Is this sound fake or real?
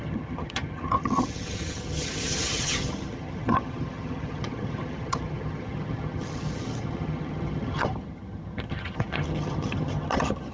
fake